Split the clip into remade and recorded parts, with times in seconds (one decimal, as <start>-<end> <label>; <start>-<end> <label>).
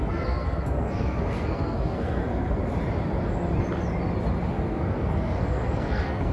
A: 0.0-2.6 remade; 2.6-4.5 recorded; 4.5-6.3 remade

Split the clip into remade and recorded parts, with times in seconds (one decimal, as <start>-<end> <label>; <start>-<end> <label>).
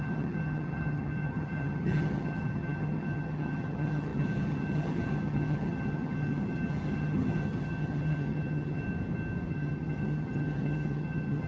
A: 0.0-8.8 remade; 8.8-9.5 recorded; 9.5-11.5 remade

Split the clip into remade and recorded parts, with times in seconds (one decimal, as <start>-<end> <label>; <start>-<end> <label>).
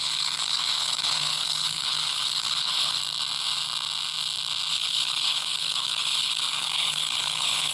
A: 0.0-3.0 remade; 3.0-4.7 recorded; 4.7-7.7 remade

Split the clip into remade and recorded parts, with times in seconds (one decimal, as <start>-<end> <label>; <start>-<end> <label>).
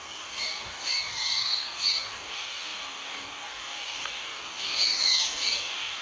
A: 0.0-6.0 remade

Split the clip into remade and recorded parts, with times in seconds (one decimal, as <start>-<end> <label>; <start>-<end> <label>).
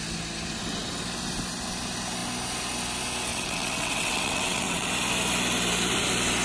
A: 0.0-3.3 recorded; 3.3-4.9 remade; 4.9-6.4 recorded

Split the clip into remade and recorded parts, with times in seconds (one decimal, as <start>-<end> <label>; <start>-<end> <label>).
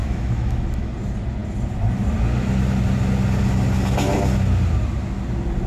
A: 0.0-0.9 remade; 0.9-5.7 recorded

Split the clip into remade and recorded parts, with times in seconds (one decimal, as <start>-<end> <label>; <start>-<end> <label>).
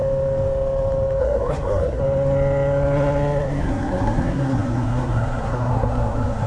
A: 0.0-1.2 recorded; 1.2-2.0 remade; 2.0-3.6 recorded; 3.6-6.5 remade